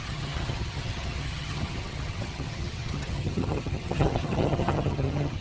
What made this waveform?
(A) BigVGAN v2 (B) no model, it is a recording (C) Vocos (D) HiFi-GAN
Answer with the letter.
D